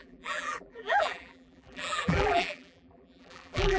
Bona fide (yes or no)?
no